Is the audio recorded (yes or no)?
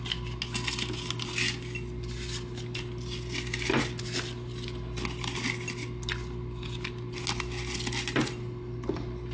yes